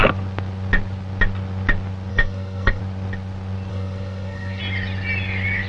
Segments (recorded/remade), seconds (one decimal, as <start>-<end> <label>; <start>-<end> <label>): 0.0-2.1 recorded; 2.1-2.8 remade; 2.8-3.7 recorded; 3.7-4.6 remade; 4.6-5.7 recorded